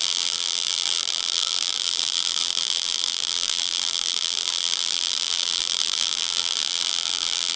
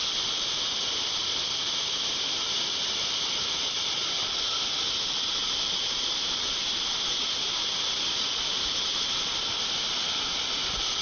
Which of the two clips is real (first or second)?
second